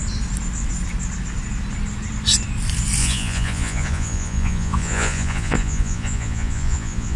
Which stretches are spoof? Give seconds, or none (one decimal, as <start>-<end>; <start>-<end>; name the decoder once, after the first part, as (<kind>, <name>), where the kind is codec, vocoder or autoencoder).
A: 3.0-7.2 (vocoder, Vocos)